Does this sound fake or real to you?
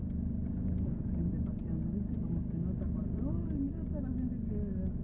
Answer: real